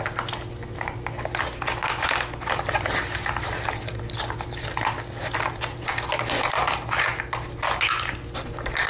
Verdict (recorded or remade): recorded